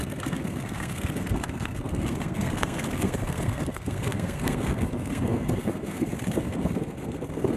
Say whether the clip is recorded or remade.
remade